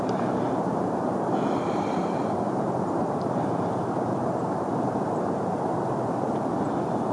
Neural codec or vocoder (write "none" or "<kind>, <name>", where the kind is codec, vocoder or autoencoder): vocoder, BigVGAN v2